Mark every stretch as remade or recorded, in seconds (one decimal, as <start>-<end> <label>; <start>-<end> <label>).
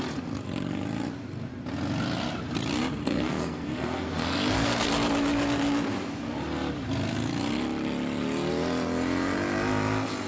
0.0-3.0 recorded; 3.0-4.9 remade; 4.9-10.3 recorded